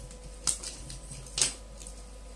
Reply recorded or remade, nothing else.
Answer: recorded